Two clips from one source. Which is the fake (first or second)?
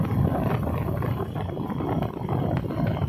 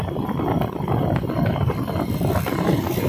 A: first